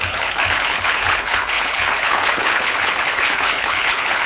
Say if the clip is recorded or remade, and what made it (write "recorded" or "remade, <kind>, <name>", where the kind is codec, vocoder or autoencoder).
remade, codec, HILCodec